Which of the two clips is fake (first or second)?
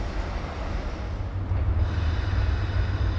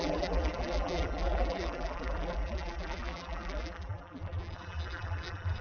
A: second